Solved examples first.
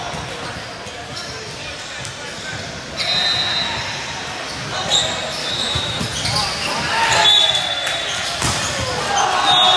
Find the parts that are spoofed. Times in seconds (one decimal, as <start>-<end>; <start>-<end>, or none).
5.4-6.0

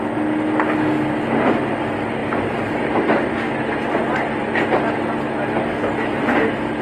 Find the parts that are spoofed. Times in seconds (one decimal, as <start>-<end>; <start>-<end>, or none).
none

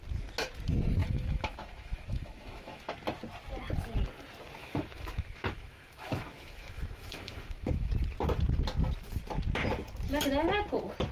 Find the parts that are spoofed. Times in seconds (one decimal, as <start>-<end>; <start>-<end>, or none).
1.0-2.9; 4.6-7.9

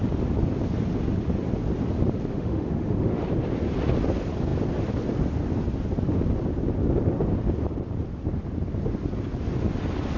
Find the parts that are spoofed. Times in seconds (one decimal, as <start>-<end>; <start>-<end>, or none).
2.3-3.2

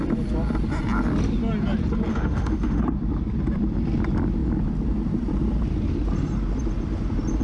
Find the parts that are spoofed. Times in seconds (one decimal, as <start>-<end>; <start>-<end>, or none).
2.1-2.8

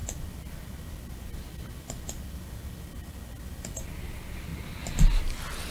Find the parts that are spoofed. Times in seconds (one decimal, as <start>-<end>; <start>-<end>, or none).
none